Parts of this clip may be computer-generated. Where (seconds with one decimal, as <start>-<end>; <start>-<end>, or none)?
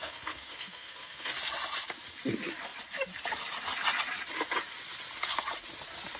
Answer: 0.0-1.3